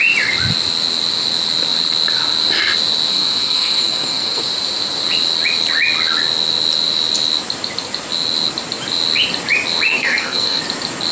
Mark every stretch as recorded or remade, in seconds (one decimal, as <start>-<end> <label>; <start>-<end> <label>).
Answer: 0.0-3.1 recorded; 3.1-4.4 remade; 4.4-9.9 recorded; 9.9-10.6 remade; 10.6-11.1 recorded